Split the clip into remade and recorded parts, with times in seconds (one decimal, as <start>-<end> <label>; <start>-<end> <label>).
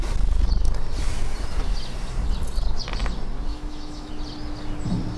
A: 0.0-3.5 recorded; 3.5-4.1 remade; 4.1-5.2 recorded